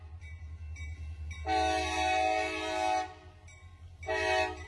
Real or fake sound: real